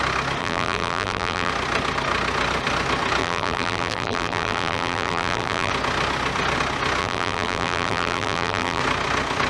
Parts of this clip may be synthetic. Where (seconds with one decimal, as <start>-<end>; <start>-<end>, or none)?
0.4-1.5; 3.2-5.7; 7.0-8.8